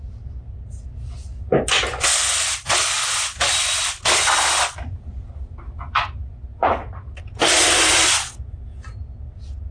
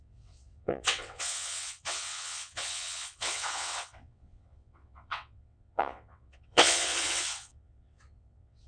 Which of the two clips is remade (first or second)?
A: second